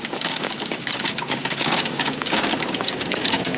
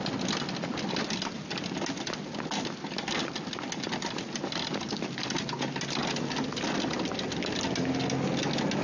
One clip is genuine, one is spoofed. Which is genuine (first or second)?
second